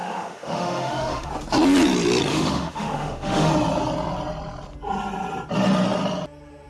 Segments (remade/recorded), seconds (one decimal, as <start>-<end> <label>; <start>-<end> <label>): 0.0-1.3 remade; 1.3-2.3 recorded; 2.3-3.5 remade; 3.5-6.7 recorded